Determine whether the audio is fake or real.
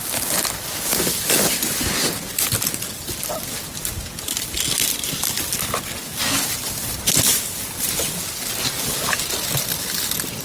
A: real